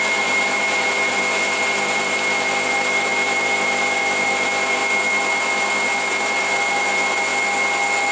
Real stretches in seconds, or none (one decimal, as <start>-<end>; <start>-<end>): 4.8-6.2; 7.3-8.1